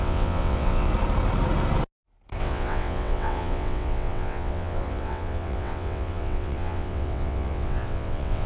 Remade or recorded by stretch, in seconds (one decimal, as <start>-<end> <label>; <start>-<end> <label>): 0.0-0.9 remade; 0.9-2.4 recorded; 2.4-8.5 remade